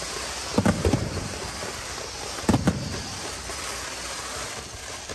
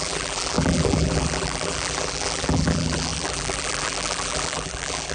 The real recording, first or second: first